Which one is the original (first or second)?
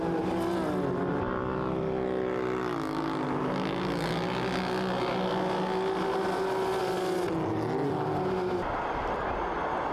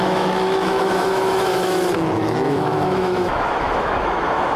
first